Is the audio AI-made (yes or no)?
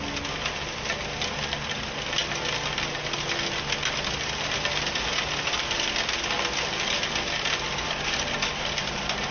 no